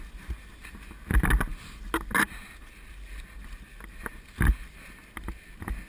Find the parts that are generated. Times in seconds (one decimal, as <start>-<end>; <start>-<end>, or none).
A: none